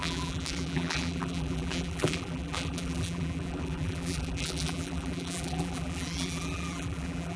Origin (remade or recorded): remade